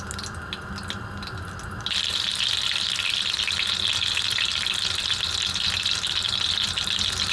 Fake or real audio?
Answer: real